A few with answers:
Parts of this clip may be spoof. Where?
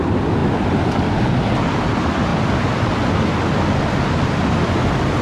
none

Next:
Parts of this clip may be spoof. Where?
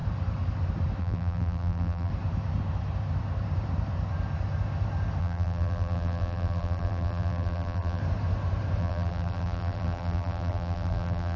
1.0-2.1 (vocoder, BigVGAN v2); 5.2-8.0; 8.8-11.4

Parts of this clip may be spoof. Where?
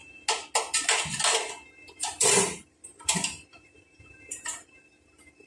1.9-2.9 (vocoder, BigVGAN v2); 3.5-5.5